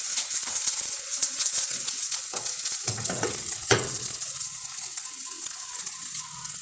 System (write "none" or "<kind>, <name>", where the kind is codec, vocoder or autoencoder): vocoder, WaveNeXt